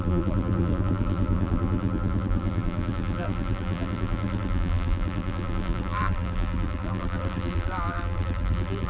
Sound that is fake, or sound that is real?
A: fake